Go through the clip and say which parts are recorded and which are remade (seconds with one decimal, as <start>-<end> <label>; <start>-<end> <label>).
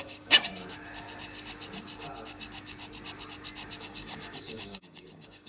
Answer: 0.0-0.5 remade; 0.5-3.8 recorded; 3.8-5.5 remade